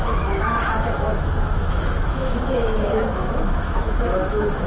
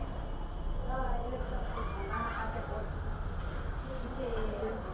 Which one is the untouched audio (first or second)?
second